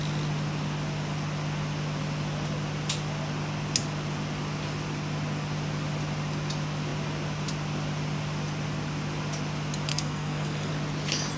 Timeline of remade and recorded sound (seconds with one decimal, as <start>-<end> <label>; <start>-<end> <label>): 0.0-9.9 recorded; 9.9-10.7 remade; 10.7-11.4 recorded